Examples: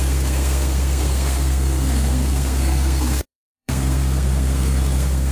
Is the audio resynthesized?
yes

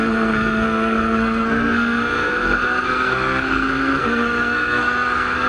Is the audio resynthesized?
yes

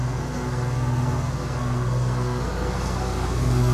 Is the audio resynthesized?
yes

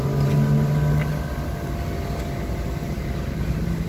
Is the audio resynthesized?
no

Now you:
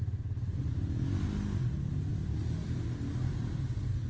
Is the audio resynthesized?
no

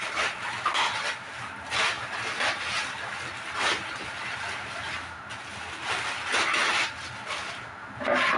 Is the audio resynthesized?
no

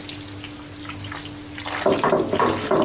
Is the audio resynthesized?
no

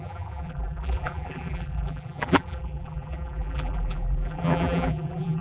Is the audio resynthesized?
yes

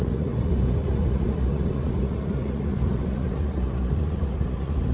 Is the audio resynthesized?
yes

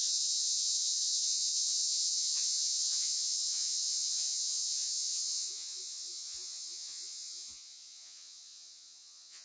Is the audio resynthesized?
yes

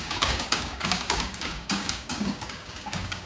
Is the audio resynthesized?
yes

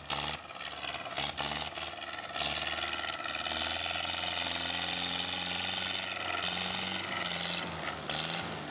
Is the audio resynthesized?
no